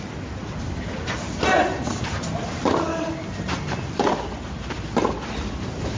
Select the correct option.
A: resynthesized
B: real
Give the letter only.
B